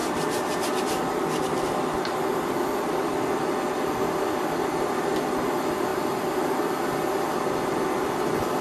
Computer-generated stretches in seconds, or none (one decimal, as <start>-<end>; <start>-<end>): 0.0-0.7; 5.9-7.5